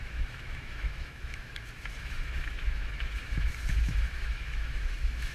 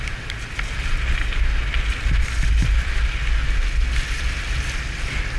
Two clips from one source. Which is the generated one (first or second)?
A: first